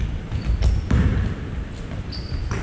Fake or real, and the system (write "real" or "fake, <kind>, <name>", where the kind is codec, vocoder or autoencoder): real